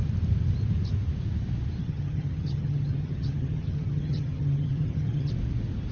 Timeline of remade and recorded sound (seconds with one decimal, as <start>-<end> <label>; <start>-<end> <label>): 0.0-1.8 recorded; 1.8-5.3 remade; 5.3-5.9 recorded